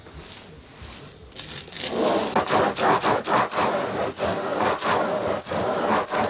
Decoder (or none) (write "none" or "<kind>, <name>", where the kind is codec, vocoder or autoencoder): none